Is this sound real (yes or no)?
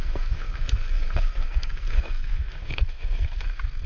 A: no